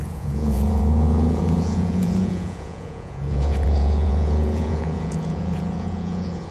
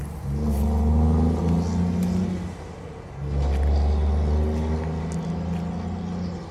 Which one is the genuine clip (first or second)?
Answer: second